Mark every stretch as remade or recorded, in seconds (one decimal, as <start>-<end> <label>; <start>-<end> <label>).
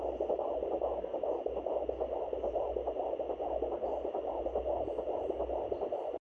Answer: 0.0-6.2 recorded